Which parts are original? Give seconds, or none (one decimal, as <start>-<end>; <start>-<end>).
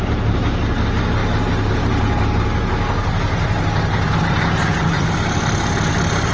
0.0-6.3